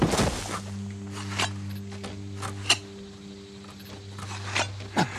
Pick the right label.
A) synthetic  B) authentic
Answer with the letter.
B